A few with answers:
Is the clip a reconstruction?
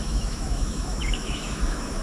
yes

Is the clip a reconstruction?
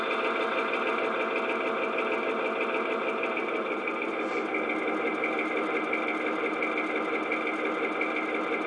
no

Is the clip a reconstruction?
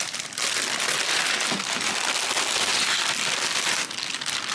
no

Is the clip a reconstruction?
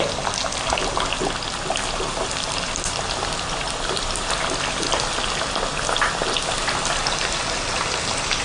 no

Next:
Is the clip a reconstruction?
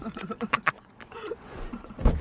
yes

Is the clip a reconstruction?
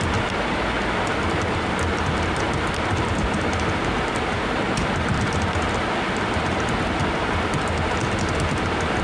no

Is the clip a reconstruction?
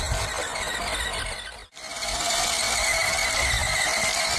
no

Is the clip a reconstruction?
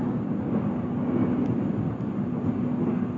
no